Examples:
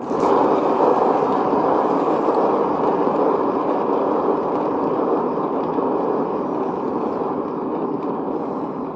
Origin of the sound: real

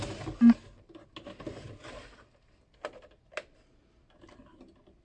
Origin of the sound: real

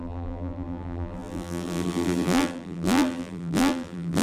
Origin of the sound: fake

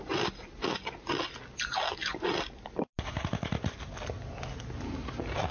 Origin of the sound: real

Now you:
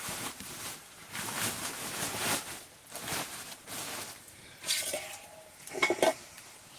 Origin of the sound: fake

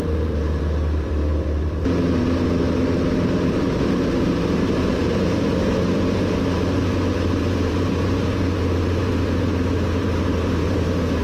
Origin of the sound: fake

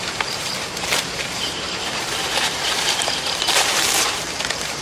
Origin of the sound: fake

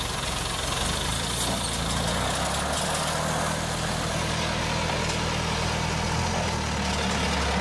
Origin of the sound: real